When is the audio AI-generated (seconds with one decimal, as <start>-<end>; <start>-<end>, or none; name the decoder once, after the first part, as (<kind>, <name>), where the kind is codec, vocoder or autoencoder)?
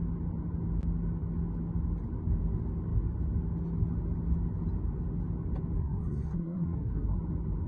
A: 5.8-7.2 (codec, SNAC)